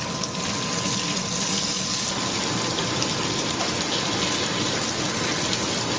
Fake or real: real